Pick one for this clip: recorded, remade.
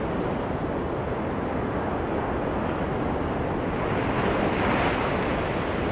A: recorded